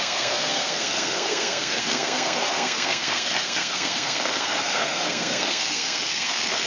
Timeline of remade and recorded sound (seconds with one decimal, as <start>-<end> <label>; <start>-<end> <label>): 0.0-6.7 remade